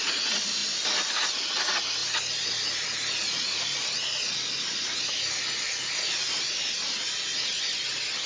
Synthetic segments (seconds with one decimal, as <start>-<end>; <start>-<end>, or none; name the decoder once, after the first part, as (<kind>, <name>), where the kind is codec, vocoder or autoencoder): none